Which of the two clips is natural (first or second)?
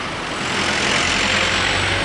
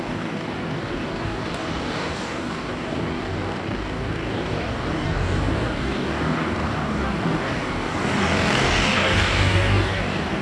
first